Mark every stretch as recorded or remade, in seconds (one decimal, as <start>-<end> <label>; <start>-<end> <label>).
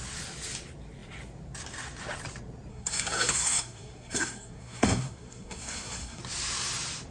0.0-2.7 recorded; 2.7-6.2 remade; 6.2-7.1 recorded